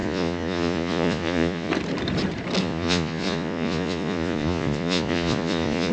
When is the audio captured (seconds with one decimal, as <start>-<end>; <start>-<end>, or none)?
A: 1.7-2.6

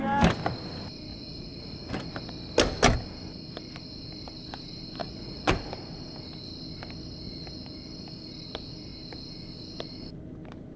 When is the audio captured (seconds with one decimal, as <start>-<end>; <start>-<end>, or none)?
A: 0.0-1.1; 1.9-5.0; 5.5-10.8

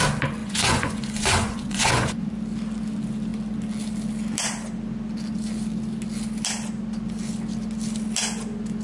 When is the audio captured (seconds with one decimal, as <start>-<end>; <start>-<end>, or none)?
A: 0.0-0.4; 2.3-8.8

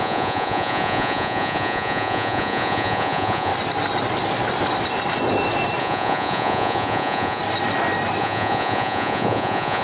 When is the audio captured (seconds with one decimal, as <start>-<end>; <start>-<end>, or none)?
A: 3.5-5.8; 7.4-8.2

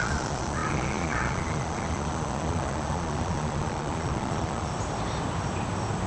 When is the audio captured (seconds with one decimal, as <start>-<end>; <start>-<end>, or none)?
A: 4.7-6.1

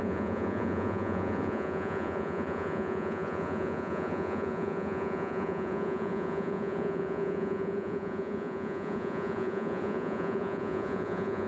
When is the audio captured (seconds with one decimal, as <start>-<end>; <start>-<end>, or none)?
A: none

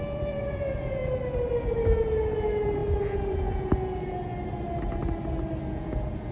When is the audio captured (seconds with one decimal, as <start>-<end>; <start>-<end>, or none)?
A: 1.0-1.6; 4.3-5.7